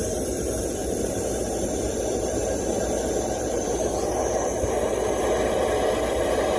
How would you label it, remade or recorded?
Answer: remade